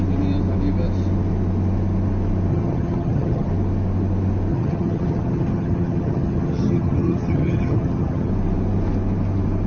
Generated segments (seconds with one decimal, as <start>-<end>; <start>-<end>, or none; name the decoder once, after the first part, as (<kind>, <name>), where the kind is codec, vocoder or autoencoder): 2.5-3.5 (vocoder, HiFi-GAN); 4.5-8.3